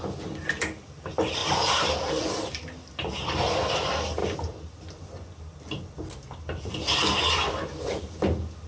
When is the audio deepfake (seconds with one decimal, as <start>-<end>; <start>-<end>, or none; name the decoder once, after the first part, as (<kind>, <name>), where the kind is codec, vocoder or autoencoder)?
1.4-2.2 (vocoder, BigVGAN v2)